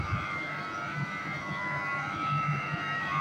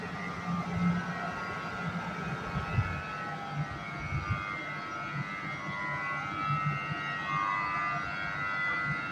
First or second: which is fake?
first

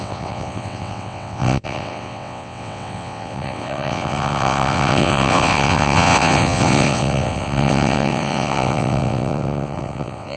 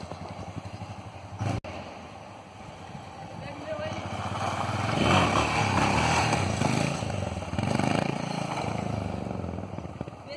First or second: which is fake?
first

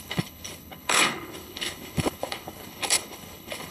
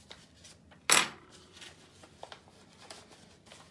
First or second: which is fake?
first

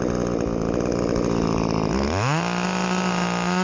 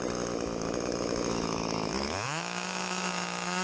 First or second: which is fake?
second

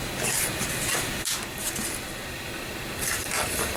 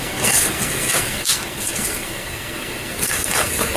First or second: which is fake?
second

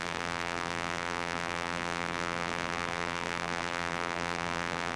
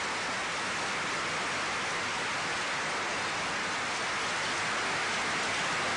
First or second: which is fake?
first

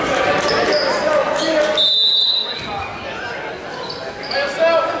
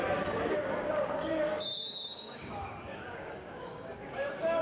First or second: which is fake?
second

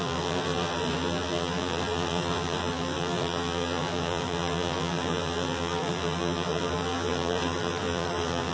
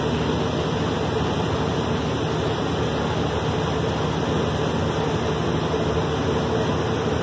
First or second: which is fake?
first